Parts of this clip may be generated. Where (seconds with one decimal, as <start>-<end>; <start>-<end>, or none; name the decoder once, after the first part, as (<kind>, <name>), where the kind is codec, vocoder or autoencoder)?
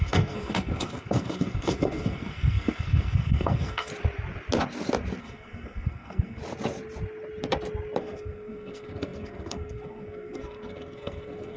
0.0-3.9 (codec, SNAC); 5.2-6.4; 8.0-11.6